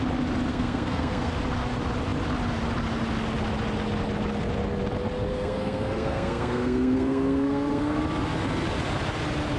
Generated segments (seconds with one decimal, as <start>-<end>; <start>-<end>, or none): 0.5-1.3; 5.3-8.0